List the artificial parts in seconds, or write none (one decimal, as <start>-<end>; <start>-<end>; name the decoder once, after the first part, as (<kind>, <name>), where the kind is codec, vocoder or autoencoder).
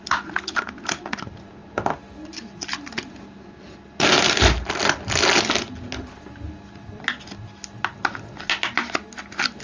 none